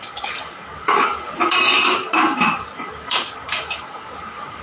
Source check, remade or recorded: remade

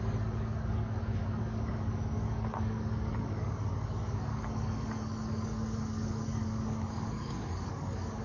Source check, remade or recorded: remade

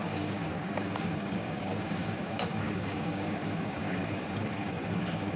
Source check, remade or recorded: remade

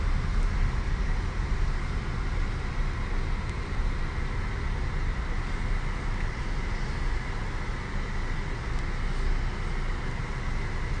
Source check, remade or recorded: recorded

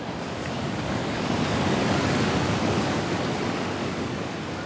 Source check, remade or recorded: remade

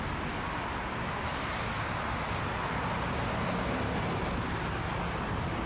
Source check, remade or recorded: recorded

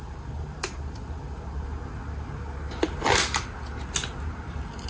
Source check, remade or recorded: recorded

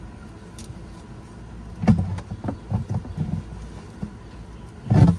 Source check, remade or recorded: recorded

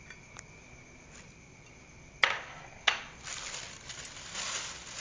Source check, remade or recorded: recorded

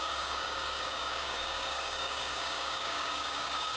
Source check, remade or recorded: remade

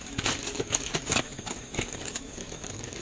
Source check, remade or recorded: remade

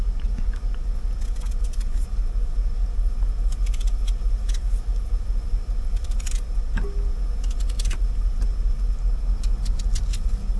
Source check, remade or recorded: recorded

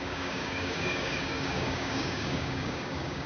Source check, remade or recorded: remade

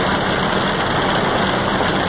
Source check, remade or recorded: recorded